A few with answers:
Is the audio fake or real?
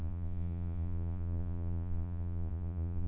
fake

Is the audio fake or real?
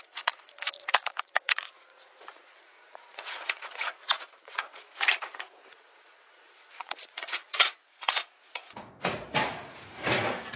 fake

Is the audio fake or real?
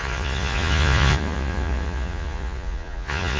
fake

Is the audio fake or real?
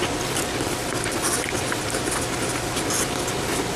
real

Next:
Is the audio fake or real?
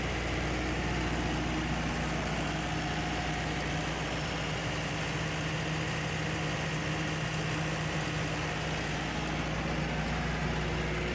real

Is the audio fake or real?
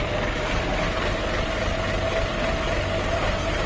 real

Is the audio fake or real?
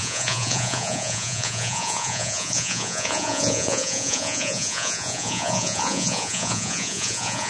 fake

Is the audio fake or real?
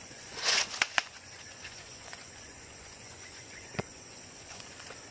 fake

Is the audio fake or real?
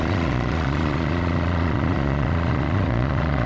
fake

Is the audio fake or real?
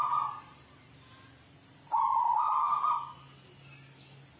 real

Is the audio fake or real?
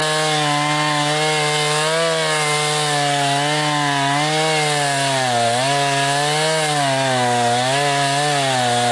real